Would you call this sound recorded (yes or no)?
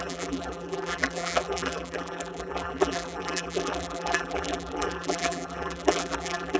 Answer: no